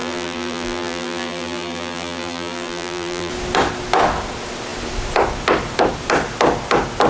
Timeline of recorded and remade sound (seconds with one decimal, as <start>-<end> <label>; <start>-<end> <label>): 0.0-3.3 remade; 3.3-7.1 recorded